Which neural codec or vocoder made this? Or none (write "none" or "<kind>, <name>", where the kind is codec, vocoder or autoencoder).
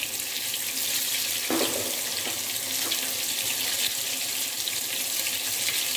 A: none